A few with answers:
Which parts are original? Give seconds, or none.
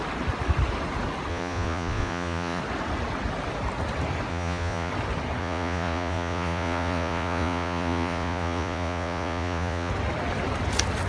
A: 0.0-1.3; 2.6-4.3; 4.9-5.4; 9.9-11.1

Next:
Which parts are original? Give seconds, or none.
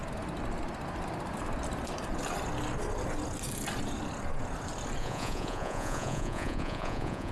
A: 0.0-5.0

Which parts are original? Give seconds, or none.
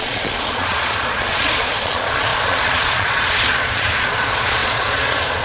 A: none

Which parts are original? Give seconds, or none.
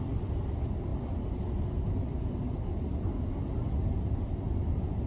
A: 0.0-5.1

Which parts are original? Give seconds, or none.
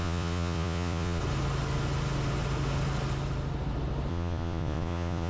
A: 1.2-4.1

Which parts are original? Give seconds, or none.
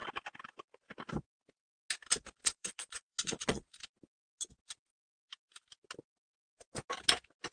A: 0.0-2.4; 3.8-7.5